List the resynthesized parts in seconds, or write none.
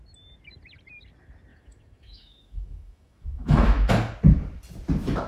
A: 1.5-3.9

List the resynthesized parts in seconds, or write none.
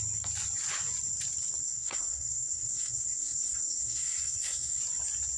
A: 1.6-4.8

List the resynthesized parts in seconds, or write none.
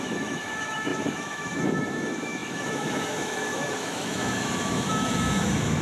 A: 0.0-5.8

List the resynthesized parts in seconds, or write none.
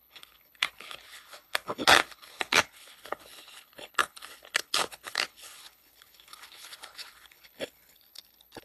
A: 0.0-8.6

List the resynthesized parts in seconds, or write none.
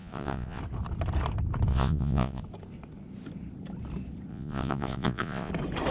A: 0.0-0.6; 1.7-2.4; 4.3-5.5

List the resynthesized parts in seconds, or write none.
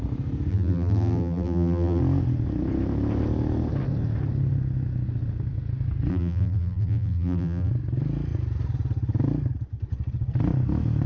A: 0.5-2.0; 6.1-7.7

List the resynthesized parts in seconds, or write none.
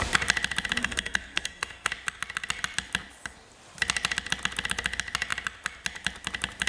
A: 0.8-1.9